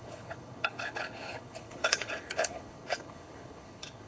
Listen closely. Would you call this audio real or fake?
fake